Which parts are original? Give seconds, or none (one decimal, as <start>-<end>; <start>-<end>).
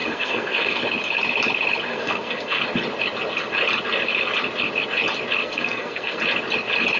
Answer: 0.8-1.9; 2.6-5.4; 6.2-7.0